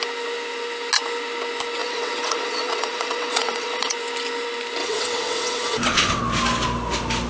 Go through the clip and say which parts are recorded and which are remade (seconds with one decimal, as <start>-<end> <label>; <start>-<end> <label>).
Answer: 0.0-1.8 recorded; 1.8-3.9 remade; 3.9-4.8 recorded; 4.8-6.2 remade; 6.2-7.3 recorded